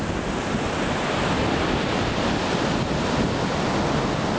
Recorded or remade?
recorded